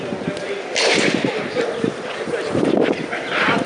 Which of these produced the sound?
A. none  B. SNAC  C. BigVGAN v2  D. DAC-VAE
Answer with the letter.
A